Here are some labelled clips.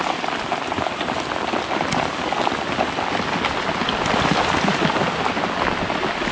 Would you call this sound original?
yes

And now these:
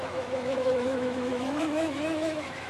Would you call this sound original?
no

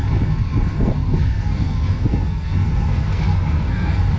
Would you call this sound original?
no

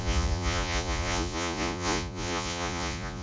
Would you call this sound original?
no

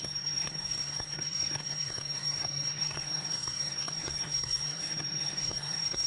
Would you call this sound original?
no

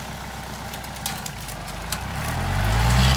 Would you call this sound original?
yes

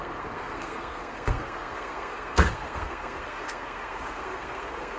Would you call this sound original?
no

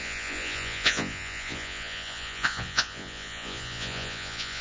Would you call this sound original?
no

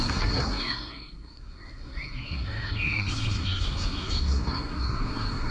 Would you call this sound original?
no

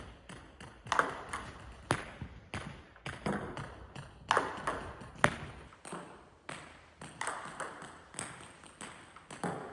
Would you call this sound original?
yes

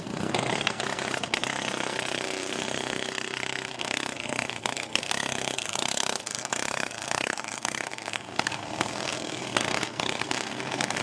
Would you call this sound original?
no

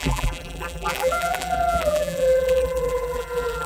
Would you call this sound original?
no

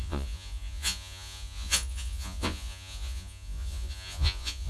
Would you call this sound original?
no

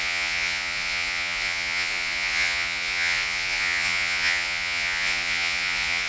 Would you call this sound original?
no